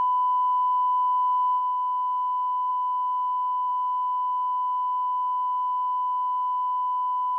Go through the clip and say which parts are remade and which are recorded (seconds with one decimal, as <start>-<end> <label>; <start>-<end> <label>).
0.0-7.4 recorded